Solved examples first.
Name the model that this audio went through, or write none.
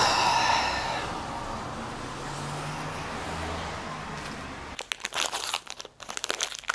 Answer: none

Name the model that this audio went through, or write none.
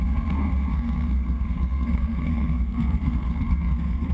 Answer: codec, SNAC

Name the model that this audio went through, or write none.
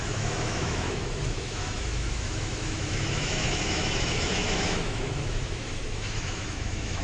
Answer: autoencoder, DAC-VAE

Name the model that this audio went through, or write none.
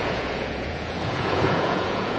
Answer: vocoder, Vocos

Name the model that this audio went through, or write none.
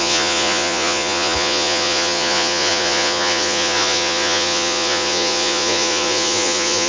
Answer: vocoder, Vocos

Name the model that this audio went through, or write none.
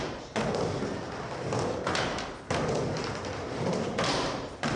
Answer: none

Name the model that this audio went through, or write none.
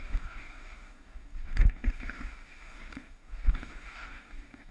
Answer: codec, DAC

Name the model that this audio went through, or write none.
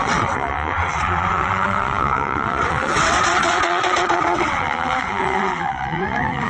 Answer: vocoder, WaveNeXt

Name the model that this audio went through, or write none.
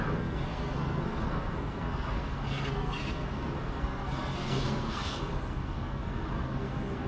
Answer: codec, SNAC